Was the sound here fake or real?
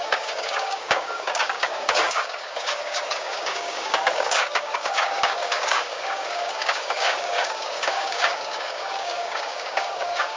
fake